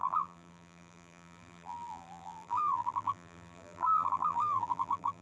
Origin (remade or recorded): remade